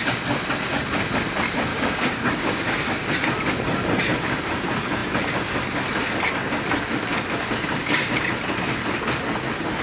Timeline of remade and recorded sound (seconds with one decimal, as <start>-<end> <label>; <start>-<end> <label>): 0.0-1.7 recorded; 1.7-3.1 remade; 3.1-7.8 recorded; 7.8-8.3 remade; 8.3-9.8 recorded